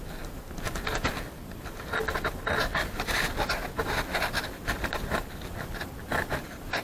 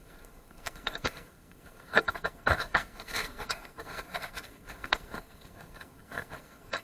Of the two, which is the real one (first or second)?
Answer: first